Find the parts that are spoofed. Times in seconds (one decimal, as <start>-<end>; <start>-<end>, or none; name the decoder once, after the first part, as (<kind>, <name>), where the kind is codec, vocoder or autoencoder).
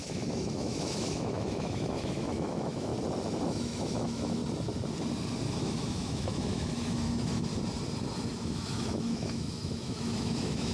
0.0-2.9 (autoencoder, DAC-VAE); 3.5-4.4; 5.5-7.5; 8.3-10.7